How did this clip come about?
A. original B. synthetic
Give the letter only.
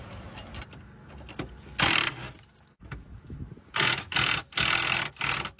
A